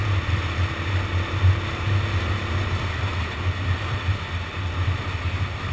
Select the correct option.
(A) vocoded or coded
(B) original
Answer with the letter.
B